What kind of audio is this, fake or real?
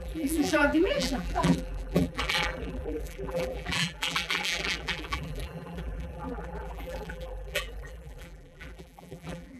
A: fake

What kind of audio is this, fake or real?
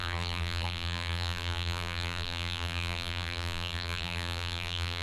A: fake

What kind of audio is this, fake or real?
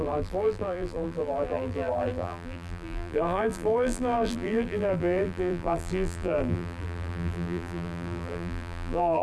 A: fake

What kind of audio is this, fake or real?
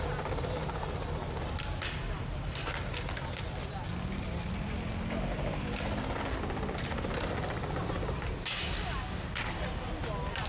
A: real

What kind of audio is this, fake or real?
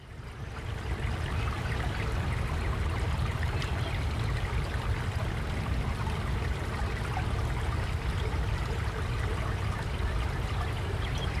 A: real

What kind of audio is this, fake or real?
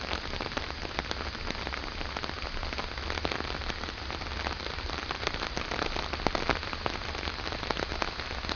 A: real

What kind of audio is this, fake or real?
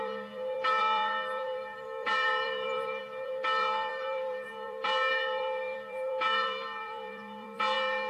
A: fake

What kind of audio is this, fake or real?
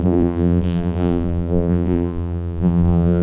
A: fake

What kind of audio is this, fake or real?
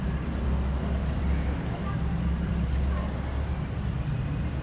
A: fake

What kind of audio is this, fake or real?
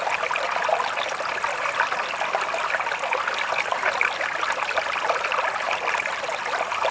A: fake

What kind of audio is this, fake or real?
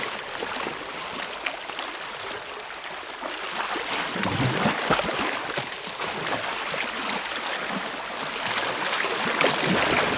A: real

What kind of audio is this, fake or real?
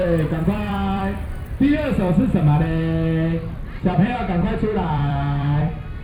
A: fake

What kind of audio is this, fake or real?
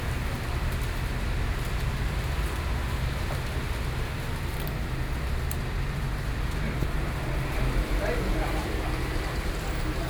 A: real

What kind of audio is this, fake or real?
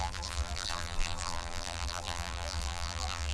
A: fake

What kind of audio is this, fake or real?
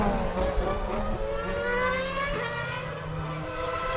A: real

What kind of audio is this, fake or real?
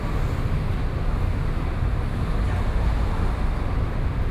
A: real